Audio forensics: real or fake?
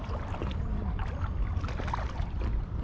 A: fake